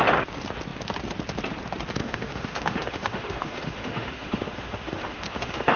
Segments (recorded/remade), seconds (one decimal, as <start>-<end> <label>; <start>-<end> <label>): 0.0-2.0 recorded; 2.0-5.8 remade